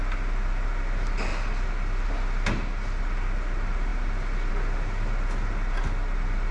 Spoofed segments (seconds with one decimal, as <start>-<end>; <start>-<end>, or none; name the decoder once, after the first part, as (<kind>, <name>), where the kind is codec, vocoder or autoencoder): none